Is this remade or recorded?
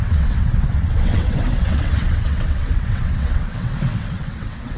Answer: remade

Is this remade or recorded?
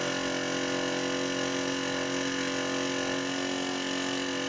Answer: recorded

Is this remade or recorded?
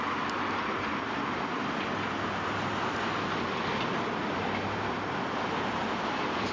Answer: recorded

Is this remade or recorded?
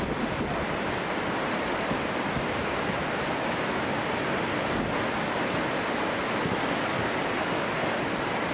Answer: recorded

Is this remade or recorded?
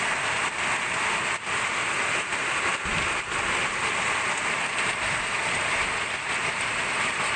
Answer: recorded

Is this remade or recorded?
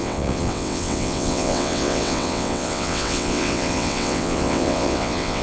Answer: remade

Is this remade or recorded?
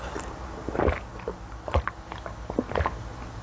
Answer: recorded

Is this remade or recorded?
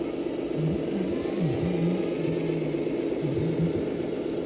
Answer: recorded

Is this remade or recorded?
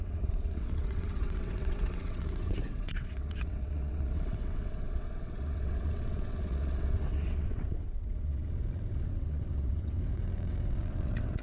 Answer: remade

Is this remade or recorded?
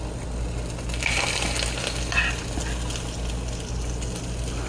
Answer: recorded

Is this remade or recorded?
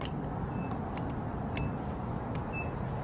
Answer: recorded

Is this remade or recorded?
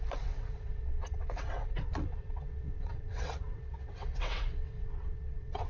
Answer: remade